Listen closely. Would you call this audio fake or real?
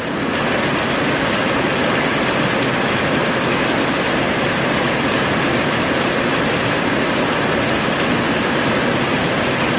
real